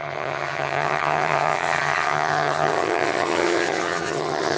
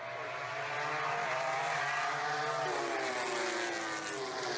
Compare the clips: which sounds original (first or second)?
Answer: second